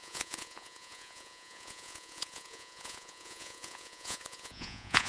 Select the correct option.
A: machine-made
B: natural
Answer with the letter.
A